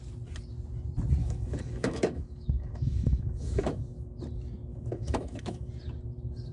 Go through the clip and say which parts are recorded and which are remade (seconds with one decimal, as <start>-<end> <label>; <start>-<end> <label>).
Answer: 0.0-1.2 recorded; 1.2-4.2 remade; 4.2-4.7 recorded; 4.7-5.7 remade; 5.7-6.5 recorded